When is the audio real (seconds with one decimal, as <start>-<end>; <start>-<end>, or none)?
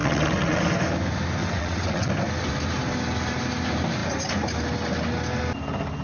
0.6-1.4; 2.1-6.0